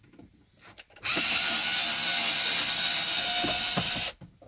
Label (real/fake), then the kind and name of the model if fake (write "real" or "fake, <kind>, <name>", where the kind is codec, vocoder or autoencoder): real